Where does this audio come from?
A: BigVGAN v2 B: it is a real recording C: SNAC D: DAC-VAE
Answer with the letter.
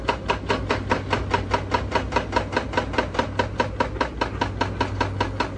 B